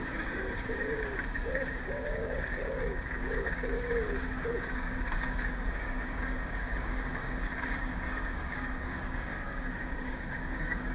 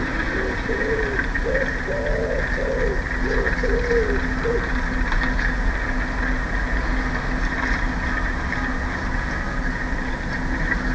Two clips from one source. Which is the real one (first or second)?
second